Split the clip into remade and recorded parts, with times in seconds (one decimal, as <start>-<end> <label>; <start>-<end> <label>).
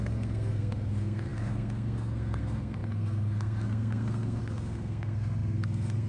0.0-6.1 remade